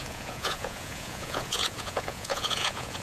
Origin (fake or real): fake